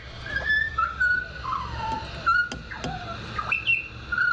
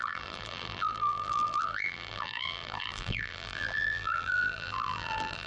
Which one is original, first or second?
first